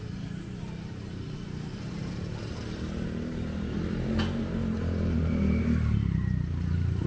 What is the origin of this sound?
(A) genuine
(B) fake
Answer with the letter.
B